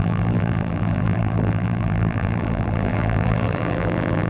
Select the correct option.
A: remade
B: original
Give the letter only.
A